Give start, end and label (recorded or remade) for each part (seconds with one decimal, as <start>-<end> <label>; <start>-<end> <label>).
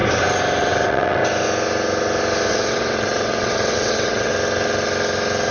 0.0-0.6 recorded; 0.6-1.2 remade; 1.2-2.5 recorded; 2.5-4.3 remade; 4.3-5.5 recorded